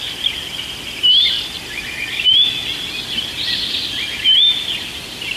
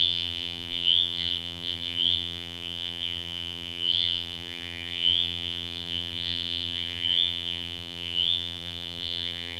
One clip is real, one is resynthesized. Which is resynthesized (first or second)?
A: second